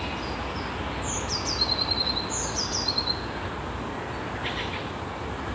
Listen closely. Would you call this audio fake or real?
real